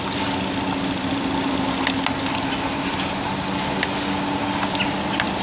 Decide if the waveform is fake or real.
real